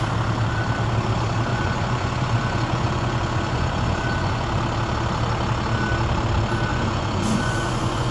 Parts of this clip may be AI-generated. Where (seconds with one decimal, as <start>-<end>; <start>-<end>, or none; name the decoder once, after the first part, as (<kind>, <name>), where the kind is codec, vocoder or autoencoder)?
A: 1.5-4.6 (vocoder, Vocos); 6.7-8.1